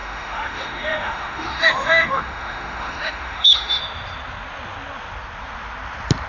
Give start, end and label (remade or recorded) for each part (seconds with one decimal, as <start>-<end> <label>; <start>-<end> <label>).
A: 0.0-3.8 remade; 3.8-6.3 recorded

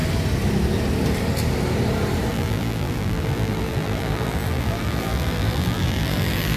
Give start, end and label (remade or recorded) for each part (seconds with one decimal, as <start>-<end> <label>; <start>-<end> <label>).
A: 0.0-2.3 recorded; 2.3-6.6 remade

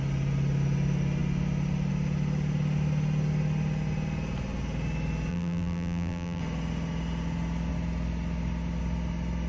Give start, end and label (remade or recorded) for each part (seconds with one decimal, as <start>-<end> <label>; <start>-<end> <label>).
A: 0.0-5.3 recorded; 5.3-6.4 remade; 6.4-9.5 recorded

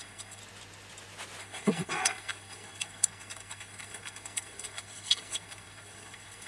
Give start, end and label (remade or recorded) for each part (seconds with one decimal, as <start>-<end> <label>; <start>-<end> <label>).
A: 0.0-0.4 remade; 0.4-1.4 recorded; 1.4-6.5 remade

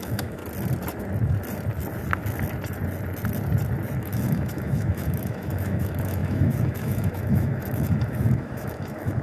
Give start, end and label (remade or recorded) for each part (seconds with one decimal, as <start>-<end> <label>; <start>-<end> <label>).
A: 0.0-0.4 remade; 0.4-4.0 recorded; 4.0-9.2 remade

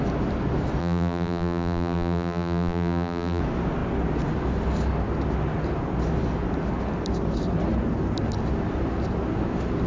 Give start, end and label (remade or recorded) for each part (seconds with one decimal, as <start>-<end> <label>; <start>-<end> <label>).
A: 0.0-0.8 recorded; 0.8-3.4 remade; 3.4-9.9 recorded

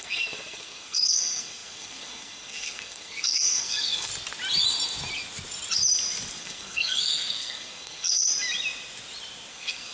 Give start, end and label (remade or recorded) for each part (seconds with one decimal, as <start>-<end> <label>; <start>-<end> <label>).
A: 0.0-4.1 remade; 4.1-6.4 recorded; 6.4-8.3 remade; 8.3-9.5 recorded; 9.5-9.9 remade